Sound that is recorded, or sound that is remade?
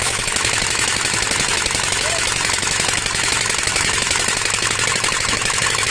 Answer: remade